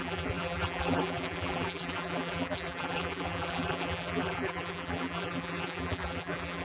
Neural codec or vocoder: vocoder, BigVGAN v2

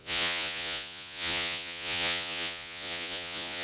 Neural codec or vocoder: vocoder, Vocos